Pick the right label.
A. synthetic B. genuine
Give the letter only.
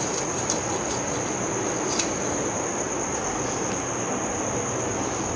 B